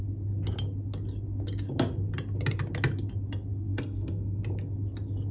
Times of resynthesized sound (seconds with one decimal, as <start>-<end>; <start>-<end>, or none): 3.7-4.4